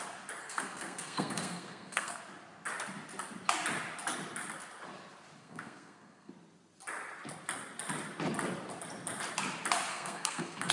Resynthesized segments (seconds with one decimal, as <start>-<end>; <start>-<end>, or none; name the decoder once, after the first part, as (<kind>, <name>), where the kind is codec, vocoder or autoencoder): 0.4-2.2 (codec, SNAC); 5.4-6.3; 9.9-10.7